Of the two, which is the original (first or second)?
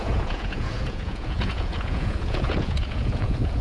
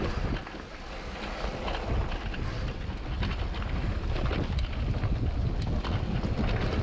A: second